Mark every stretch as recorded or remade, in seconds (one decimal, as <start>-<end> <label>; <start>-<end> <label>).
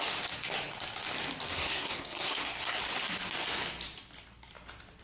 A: 0.0-1.5 recorded; 1.5-2.8 remade; 2.8-5.0 recorded